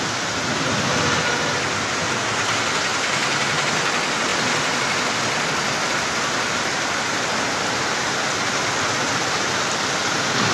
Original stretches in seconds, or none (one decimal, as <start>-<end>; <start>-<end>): 0.0-10.5